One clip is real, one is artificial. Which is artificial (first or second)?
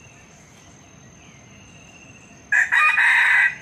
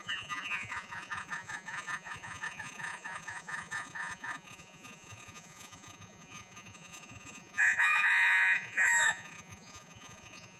second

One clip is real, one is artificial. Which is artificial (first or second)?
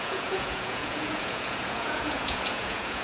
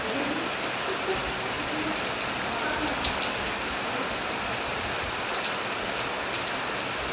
first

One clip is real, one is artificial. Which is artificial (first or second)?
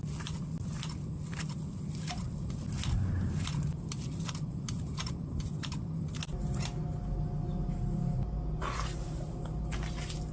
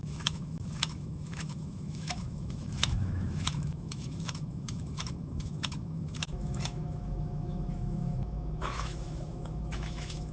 second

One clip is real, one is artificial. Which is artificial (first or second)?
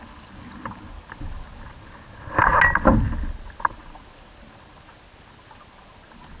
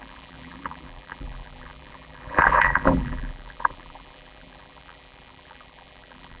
second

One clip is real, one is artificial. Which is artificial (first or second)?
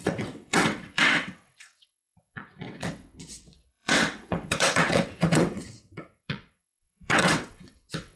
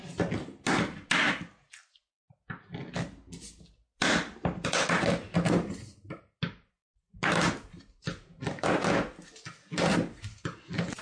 first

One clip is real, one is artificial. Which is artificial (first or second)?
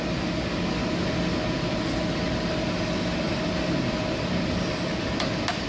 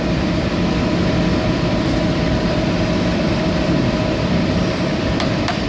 second